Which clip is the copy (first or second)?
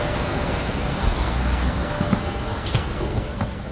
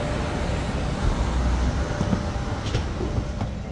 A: first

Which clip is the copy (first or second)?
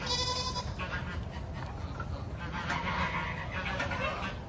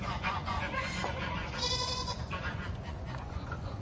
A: second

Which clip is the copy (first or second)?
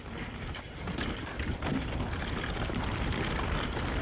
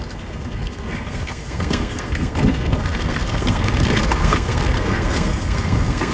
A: second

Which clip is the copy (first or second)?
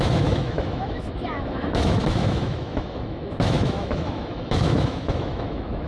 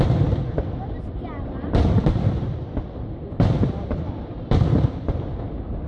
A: first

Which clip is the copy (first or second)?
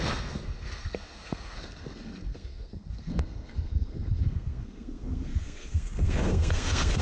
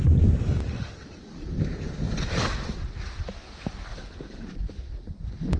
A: first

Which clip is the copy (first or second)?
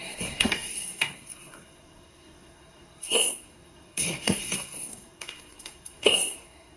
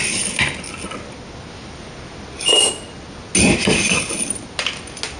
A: first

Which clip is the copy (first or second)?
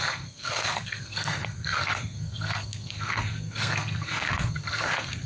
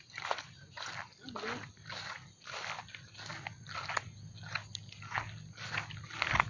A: first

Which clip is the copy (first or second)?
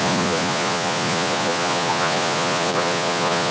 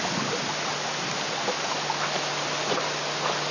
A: first